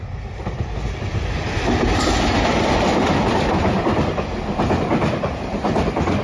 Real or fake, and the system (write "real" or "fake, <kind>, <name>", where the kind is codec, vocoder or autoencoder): fake, vocoder, BigVGAN v2